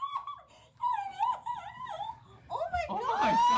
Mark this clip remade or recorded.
remade